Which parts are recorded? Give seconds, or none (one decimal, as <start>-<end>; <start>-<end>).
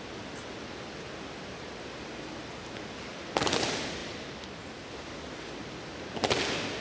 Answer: 0.0-6.8